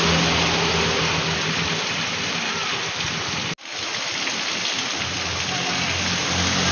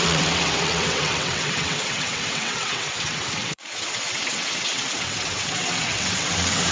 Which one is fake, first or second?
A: second